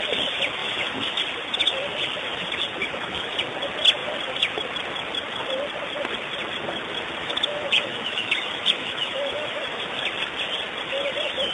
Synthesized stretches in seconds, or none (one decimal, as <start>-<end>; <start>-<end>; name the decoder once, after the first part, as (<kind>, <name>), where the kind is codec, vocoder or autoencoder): 0.6-1.2 (autoencoder, DAC-VAE); 2.8-3.4; 7.2-9.8